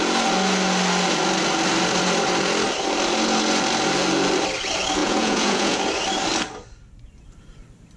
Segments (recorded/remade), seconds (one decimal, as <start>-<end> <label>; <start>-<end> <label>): 0.0-5.0 recorded; 5.0-5.8 remade; 5.8-8.0 recorded